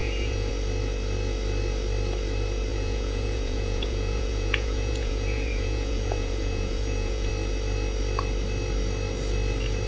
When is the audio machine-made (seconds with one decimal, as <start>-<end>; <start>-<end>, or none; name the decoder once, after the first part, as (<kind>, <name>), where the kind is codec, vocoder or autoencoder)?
0.0-0.5 (vocoder, Vocos); 2.7-7.3